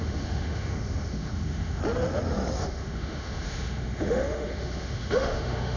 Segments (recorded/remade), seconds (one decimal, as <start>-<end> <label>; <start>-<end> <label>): 0.0-1.8 remade; 1.8-2.6 recorded; 2.6-5.8 remade